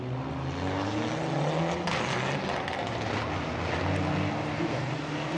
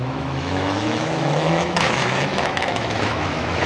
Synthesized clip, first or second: second